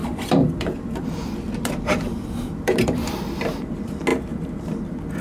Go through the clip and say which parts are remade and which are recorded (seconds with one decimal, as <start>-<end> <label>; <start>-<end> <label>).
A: 0.0-3.1 remade; 3.1-5.2 recorded